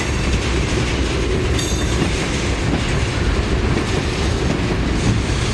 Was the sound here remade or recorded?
recorded